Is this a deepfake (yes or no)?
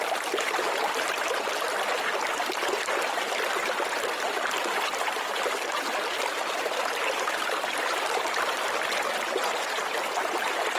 no